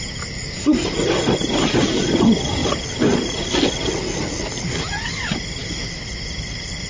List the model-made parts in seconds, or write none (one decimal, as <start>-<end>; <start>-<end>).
none